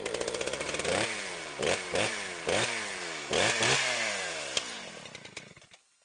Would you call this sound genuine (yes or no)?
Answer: no